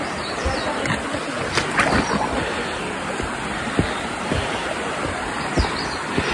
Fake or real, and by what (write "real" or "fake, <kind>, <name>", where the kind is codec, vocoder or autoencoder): real